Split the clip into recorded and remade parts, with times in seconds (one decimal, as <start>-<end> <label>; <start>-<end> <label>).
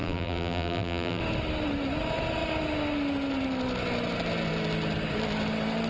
0.0-1.2 remade; 1.2-5.9 recorded